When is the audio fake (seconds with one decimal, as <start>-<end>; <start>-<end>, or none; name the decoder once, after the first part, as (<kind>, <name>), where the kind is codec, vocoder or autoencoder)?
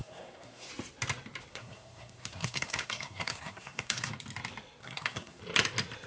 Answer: 0.0-0.7 (codec, SNAC); 1.5-4.1; 4.8-5.4